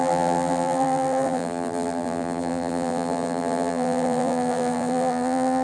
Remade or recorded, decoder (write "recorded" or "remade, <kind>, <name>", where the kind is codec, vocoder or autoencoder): remade, vocoder, BigVGAN v2